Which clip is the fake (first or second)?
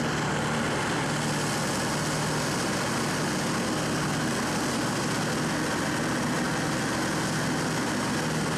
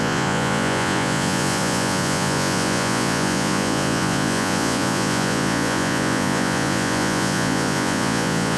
second